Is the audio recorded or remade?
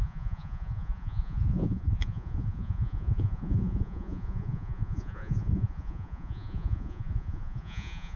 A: remade